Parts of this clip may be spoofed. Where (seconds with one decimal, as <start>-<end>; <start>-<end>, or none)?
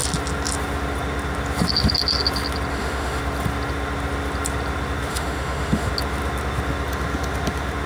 2.7-3.2; 5.1-5.9